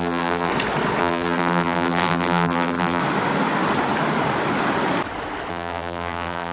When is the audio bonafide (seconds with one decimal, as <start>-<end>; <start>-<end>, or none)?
0.5-1.0; 3.0-5.5